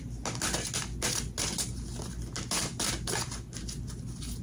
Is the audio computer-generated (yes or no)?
no